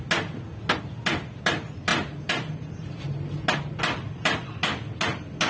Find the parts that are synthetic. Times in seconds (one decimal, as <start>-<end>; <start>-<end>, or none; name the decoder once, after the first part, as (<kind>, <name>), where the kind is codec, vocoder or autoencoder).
none